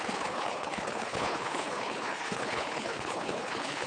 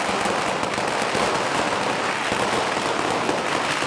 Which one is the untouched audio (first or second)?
second